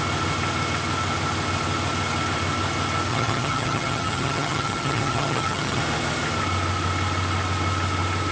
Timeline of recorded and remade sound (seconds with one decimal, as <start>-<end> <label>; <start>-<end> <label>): 0.0-3.1 recorded; 3.1-5.8 remade; 5.8-8.3 recorded